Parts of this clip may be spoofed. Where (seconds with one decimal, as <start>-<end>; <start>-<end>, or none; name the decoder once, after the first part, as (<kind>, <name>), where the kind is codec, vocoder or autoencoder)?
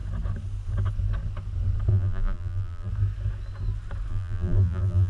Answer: 1.9-2.9 (vocoder, BigVGAN v2); 4.1-5.1